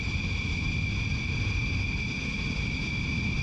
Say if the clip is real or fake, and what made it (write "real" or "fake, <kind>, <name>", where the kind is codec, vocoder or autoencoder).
real